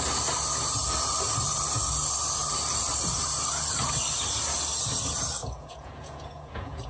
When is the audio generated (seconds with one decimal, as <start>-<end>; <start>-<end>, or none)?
5.4-6.9